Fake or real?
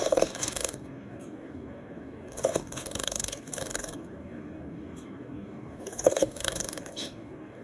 fake